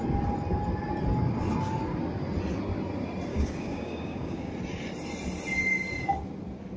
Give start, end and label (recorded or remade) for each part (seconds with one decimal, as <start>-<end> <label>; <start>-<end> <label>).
0.0-3.3 recorded; 3.3-4.5 remade; 4.5-6.8 recorded